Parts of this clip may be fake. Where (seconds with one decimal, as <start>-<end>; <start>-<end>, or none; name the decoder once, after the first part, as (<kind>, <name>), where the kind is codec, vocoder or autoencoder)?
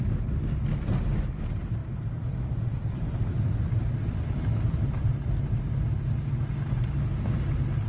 none